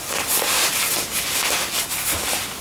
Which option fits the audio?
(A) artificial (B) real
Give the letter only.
B